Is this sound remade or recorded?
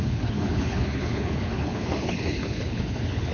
remade